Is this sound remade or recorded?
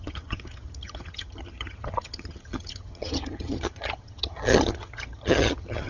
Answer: remade